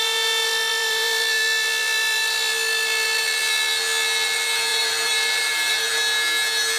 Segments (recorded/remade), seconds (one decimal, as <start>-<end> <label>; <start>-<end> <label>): 0.0-0.7 recorded; 0.7-2.5 remade; 2.5-4.7 recorded; 4.7-5.7 remade; 5.7-6.8 recorded